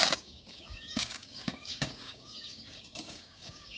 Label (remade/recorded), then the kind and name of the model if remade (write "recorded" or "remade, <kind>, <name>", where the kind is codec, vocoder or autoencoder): remade, codec, DAC